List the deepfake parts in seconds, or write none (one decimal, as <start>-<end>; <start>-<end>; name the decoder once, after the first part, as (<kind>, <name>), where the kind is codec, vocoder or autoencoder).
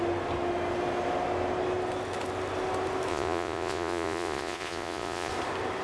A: 3.1-5.3 (vocoder, Vocos)